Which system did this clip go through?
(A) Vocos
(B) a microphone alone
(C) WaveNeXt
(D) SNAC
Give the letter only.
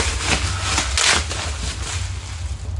B